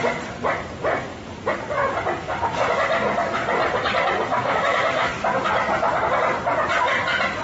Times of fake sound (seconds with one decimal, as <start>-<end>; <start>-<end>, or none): 4.3-5.1